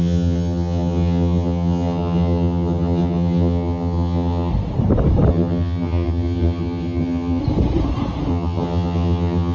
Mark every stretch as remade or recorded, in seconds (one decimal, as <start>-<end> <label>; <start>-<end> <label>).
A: 0.0-4.5 remade; 4.5-5.3 recorded; 5.3-7.4 remade; 7.4-8.3 recorded; 8.3-9.5 remade